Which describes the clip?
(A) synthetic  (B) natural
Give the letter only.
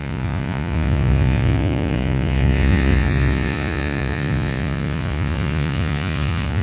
A